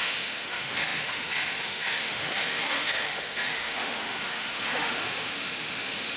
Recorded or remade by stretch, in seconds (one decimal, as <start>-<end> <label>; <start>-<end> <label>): 0.0-6.2 remade